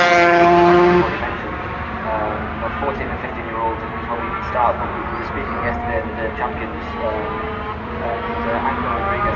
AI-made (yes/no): no